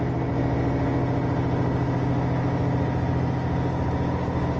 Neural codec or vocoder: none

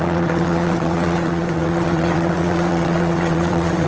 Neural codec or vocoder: vocoder, WaveNeXt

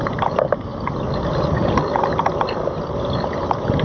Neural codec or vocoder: none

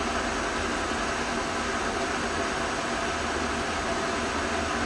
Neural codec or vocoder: none